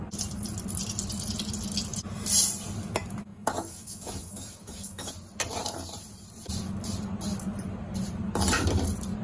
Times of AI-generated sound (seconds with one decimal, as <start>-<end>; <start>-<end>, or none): 3.3-5.1